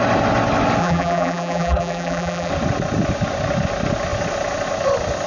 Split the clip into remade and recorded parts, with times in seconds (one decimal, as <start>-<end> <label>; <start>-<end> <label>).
0.0-0.8 recorded; 0.8-2.5 remade; 2.5-5.3 recorded